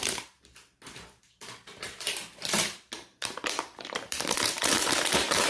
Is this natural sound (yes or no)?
no